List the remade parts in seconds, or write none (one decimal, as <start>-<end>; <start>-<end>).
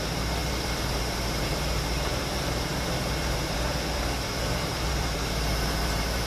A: 0.0-6.3